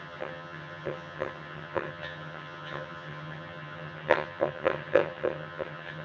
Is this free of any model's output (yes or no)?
no